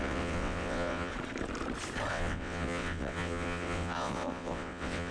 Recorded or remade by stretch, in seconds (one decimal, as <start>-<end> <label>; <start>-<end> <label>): 0.0-1.1 remade; 1.1-2.1 recorded; 2.1-5.1 remade